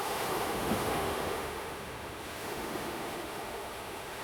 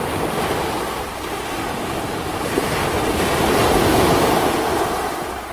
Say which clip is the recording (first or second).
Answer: second